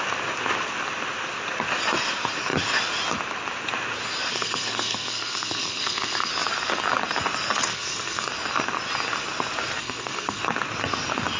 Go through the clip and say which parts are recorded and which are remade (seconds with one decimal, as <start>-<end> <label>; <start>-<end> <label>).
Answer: 0.0-4.3 recorded; 4.3-6.3 remade; 6.3-7.7 recorded; 7.7-8.3 remade; 8.3-9.8 recorded; 9.8-10.4 remade; 10.4-11.4 recorded